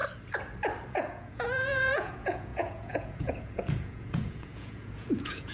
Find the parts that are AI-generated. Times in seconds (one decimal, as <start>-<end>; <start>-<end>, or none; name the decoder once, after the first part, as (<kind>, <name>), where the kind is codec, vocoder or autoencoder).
0.9-5.5 (vocoder, Vocos)